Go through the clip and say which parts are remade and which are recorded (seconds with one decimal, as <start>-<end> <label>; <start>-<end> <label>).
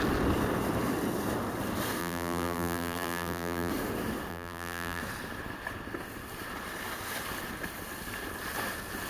0.0-2.0 recorded; 2.0-3.7 remade; 3.7-4.3 recorded; 4.3-5.0 remade; 5.0-9.1 recorded